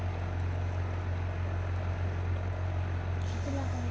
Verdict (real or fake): real